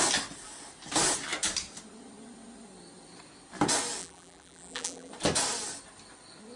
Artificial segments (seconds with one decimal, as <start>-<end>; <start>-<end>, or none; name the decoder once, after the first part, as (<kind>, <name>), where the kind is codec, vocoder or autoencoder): 4.0-5.1 (vocoder, BigVGAN v2)